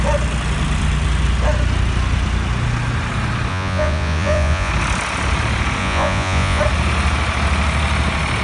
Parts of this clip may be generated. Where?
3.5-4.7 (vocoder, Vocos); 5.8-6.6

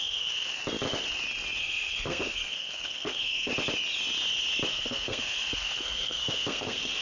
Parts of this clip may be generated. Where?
0.0-0.6 (codec, SNAC); 1.6-3.5; 4.7-7.0